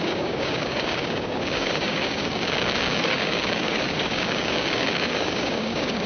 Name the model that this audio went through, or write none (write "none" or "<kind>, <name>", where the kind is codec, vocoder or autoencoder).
codec, DAC